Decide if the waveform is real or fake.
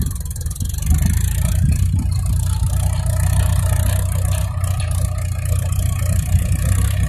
real